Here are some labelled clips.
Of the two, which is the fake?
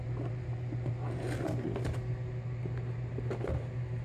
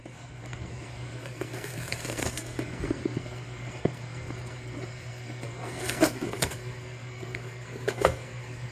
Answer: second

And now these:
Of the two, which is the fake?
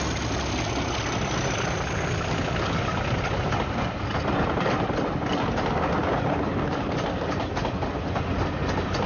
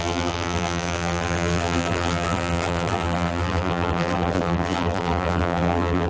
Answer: second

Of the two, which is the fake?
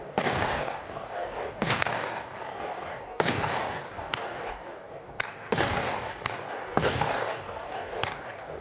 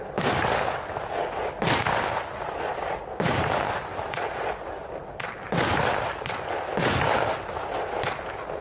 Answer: first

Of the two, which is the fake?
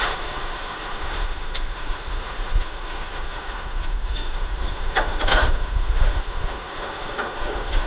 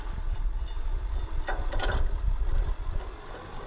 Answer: first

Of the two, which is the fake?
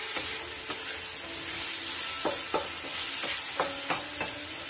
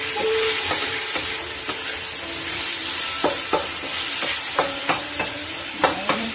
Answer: second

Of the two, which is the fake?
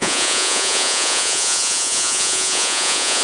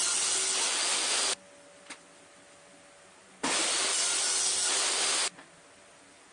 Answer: first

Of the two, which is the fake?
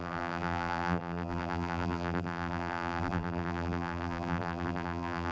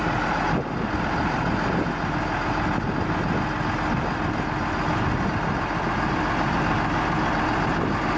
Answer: first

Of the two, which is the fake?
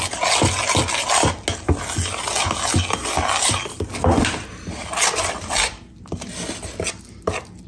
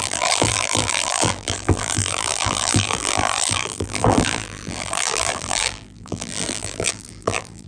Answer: second